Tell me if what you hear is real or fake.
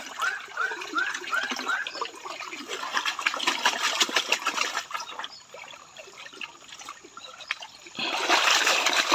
real